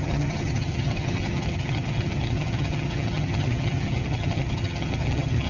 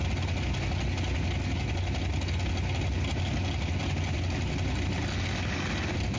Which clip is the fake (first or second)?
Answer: first